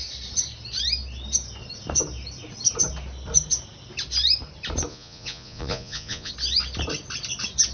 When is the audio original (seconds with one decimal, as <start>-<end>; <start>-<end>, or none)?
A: 0.0-4.9; 6.3-7.7